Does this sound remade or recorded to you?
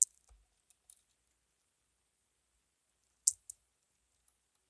recorded